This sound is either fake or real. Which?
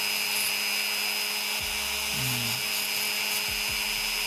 real